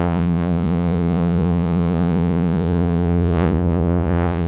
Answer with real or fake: fake